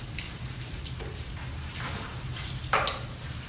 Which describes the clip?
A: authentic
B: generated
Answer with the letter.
B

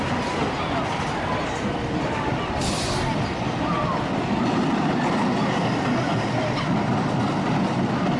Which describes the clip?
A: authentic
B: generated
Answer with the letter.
A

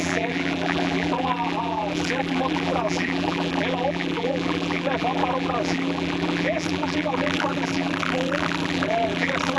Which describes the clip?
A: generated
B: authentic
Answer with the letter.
A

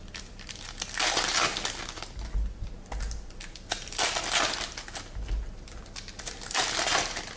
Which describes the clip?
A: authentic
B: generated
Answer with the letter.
A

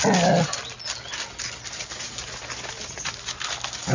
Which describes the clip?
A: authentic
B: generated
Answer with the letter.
A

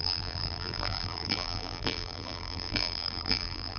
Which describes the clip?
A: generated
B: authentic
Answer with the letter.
A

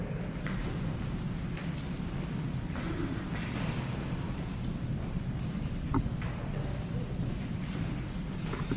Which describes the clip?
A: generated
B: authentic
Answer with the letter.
B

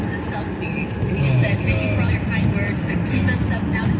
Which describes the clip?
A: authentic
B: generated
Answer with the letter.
A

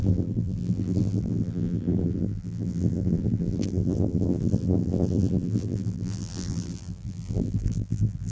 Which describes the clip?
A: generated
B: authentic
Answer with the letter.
A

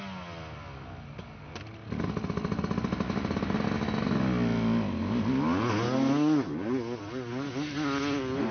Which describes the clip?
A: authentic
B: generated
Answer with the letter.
A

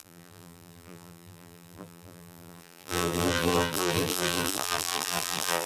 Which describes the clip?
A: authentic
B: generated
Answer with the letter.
B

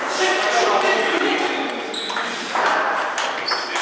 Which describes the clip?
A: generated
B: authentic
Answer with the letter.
B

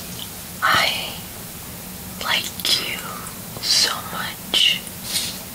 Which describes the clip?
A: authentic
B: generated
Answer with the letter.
A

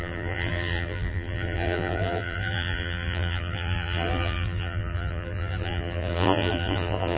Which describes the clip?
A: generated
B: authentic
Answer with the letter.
A